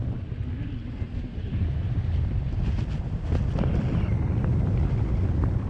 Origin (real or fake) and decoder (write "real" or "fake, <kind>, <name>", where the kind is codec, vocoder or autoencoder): real